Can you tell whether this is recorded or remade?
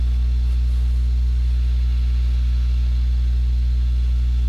recorded